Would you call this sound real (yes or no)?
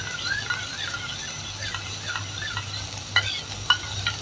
yes